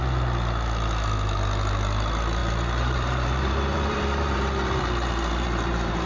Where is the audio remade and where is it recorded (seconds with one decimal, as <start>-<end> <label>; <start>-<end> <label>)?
0.0-2.4 recorded; 2.4-6.1 remade